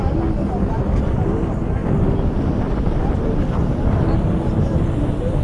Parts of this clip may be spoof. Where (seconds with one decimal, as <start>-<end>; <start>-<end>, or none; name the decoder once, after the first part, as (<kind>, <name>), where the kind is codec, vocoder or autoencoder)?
none